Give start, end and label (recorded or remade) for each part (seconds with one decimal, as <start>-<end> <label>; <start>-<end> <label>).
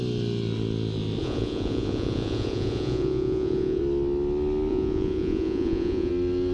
0.0-1.2 recorded; 1.2-3.8 remade; 3.8-4.7 recorded; 4.7-6.1 remade; 6.1-6.5 recorded